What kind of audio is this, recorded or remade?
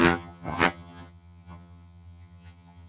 remade